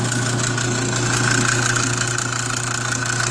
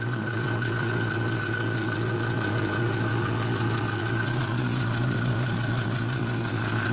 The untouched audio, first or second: first